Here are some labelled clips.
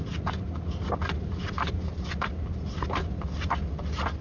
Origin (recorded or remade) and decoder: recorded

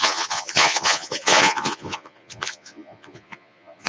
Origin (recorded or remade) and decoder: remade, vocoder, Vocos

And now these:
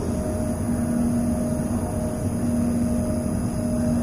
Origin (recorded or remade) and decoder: recorded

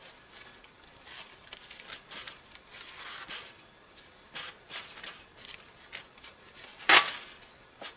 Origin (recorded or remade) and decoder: recorded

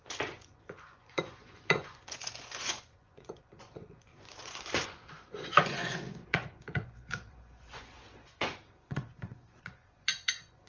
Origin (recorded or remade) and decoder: remade, vocoder, Vocos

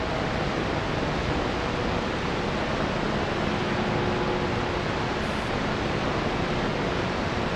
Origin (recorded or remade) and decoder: recorded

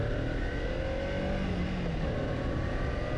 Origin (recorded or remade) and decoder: recorded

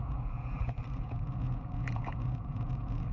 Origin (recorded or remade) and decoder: remade, vocoder, Vocos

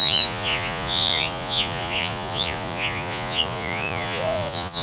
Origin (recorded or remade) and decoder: remade, vocoder, Vocos